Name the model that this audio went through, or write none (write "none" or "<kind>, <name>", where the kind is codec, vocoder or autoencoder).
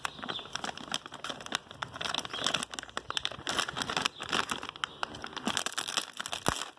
none